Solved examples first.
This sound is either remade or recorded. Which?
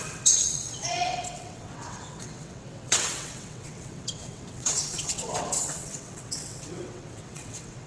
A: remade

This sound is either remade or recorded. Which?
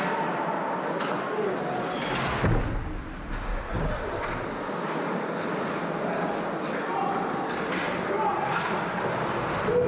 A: recorded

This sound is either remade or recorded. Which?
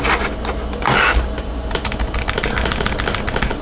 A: recorded